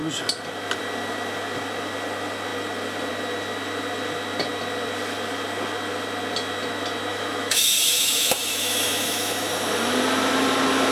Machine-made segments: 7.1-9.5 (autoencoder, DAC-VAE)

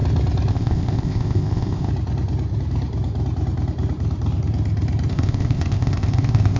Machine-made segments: 0.5-1.9 (codec, ZipCodec); 5.1-6.6

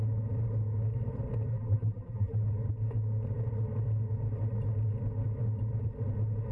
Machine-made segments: 1.5-2.4 (vocoder, BigVGAN v2)

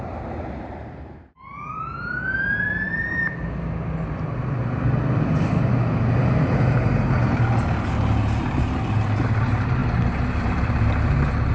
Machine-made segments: 0.0-4.6 (vocoder, BigVGAN v2); 7.2-9.8; 10.4-11.5

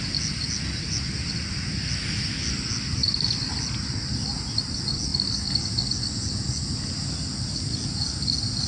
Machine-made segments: none